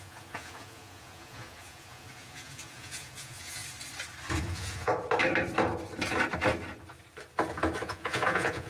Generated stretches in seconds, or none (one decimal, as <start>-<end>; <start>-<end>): 0.0-3.6; 4.4-4.9; 7.8-8.7

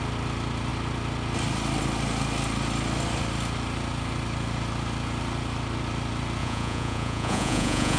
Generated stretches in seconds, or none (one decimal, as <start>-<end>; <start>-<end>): 6.4-8.0